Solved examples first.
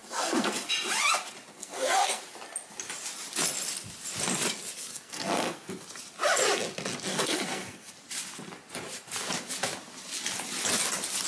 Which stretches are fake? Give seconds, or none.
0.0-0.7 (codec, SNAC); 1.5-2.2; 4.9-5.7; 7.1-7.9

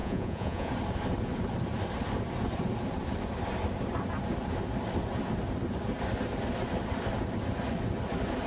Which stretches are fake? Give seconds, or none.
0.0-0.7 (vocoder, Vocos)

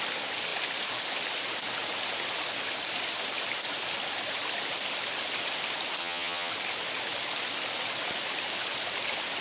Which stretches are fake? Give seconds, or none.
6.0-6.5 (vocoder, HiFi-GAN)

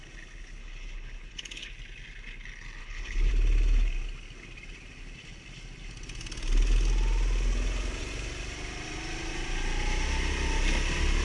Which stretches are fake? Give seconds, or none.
0.6-1.7 (codec, HILCodec); 2.8-3.3